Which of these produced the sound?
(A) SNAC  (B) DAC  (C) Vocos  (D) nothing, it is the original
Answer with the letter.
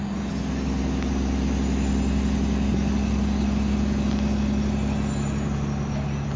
D